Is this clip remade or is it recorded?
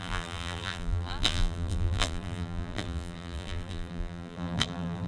remade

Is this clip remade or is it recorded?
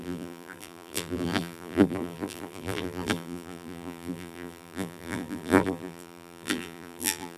remade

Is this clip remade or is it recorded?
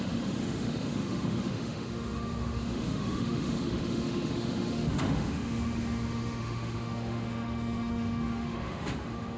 remade